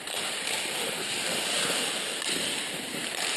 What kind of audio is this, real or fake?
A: fake